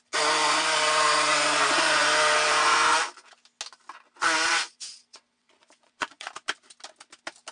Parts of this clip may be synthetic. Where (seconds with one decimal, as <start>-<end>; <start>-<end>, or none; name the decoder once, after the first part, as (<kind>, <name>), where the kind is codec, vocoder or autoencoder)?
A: 4.2-6.3 (vocoder, Vocos)